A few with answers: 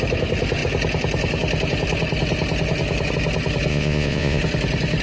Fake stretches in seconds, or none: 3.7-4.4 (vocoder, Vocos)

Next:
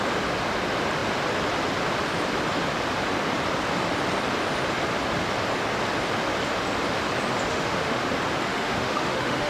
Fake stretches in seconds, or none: 7.5-8.0 (autoencoder, DAC-VAE); 8.5-9.5